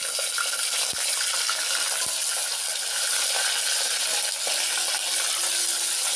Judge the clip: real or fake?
real